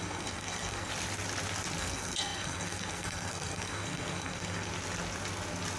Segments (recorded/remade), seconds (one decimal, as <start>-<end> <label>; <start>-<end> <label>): 0.0-0.9 remade; 0.9-1.8 recorded; 1.8-4.7 remade; 4.7-5.8 recorded